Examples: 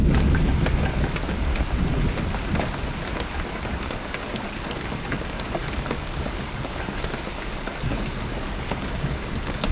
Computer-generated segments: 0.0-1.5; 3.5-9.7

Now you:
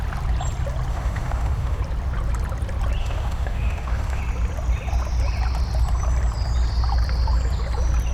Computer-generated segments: 0.9-1.8; 3.0-4.2

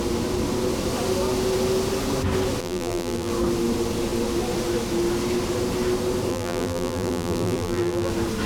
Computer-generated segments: 2.6-3.3; 6.3-8.1

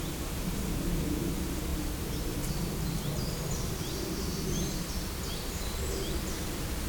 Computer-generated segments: none

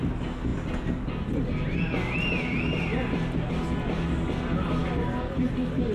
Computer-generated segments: none